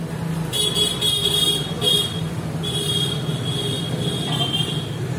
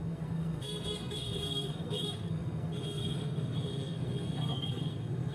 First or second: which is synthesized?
second